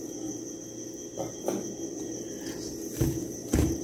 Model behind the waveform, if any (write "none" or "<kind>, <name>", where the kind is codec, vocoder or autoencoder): none